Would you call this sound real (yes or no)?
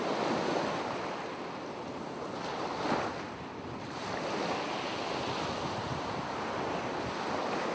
yes